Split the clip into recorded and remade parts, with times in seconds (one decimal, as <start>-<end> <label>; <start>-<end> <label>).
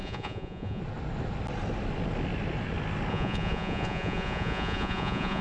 0.0-0.8 remade; 0.8-3.1 recorded; 3.1-5.4 remade